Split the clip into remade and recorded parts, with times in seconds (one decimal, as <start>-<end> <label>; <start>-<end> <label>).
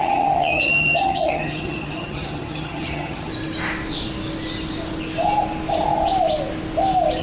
0.0-3.3 remade; 3.3-7.2 recorded